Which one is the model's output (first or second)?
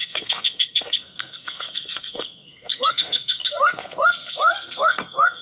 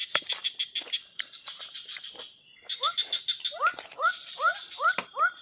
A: first